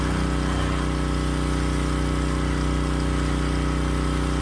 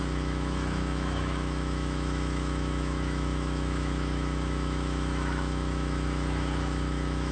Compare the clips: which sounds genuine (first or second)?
first